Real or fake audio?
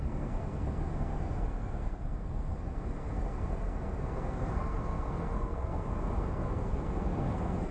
fake